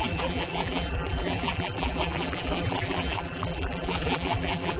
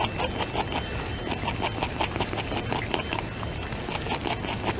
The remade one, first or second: first